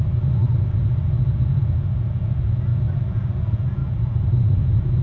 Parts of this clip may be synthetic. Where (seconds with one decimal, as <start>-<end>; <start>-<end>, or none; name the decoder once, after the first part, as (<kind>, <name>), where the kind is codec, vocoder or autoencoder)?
3.8-5.0 (vocoder, BigVGAN v2)

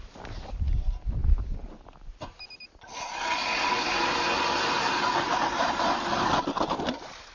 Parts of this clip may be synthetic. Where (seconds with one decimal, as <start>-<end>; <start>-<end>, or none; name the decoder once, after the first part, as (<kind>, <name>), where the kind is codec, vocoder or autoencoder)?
none

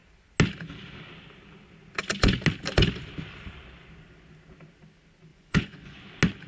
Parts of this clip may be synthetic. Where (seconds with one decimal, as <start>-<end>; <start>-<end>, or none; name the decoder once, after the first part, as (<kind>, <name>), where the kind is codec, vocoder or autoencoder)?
5.3-6.0 (vocoder, Vocos)

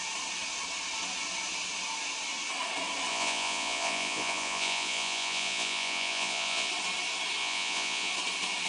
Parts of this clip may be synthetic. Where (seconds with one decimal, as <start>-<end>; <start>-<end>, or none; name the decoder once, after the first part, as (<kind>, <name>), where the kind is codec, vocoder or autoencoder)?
3.1-6.7 (vocoder, Vocos); 7.4-8.1